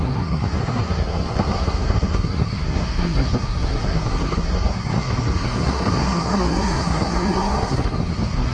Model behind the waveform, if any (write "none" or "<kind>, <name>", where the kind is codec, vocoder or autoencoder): codec, SNAC